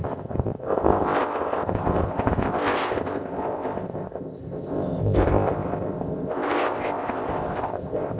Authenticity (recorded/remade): remade